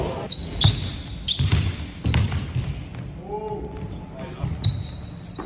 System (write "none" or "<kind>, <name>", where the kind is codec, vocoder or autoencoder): none